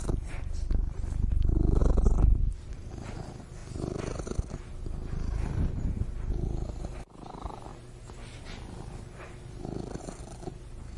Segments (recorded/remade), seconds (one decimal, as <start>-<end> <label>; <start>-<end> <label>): 0.0-1.8 remade; 1.8-2.4 recorded; 2.4-3.6 remade; 3.6-6.8 recorded; 6.8-7.7 remade; 7.7-10.0 recorded; 10.0-11.0 remade